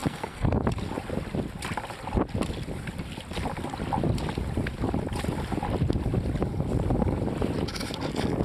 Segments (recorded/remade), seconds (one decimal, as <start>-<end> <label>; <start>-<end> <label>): 0.0-0.6 remade; 0.6-8.4 recorded